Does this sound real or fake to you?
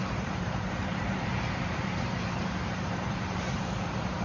fake